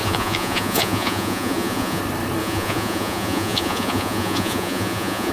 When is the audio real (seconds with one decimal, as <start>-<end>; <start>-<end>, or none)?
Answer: 2.0-2.4